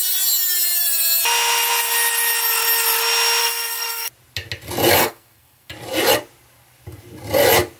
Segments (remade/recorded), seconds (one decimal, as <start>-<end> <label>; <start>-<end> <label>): 0.0-3.4 recorded; 3.4-4.1 remade; 4.1-5.0 recorded; 5.0-5.7 remade; 5.7-7.8 recorded